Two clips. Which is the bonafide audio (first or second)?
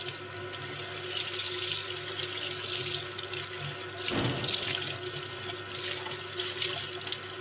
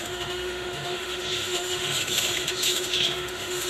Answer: first